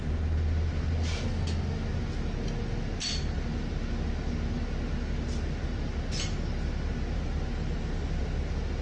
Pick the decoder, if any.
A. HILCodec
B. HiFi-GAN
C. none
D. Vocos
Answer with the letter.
C